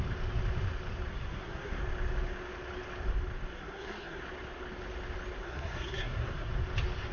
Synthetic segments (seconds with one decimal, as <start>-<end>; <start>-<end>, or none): 1.1-1.8; 3.5-4.2; 5.4-6.5